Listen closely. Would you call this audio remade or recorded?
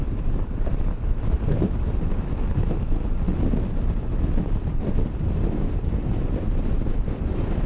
recorded